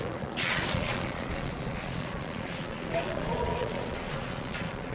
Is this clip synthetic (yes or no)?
yes